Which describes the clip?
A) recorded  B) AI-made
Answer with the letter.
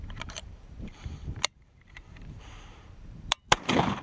B